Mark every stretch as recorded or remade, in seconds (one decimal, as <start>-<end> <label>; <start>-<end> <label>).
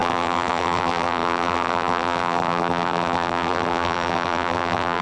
0.0-5.0 remade